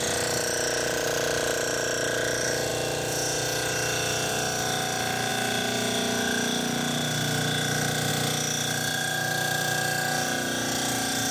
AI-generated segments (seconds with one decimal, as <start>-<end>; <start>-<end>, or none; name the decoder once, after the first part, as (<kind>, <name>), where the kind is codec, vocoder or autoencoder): none